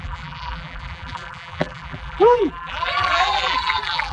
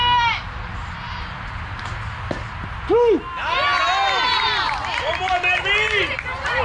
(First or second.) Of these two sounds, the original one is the second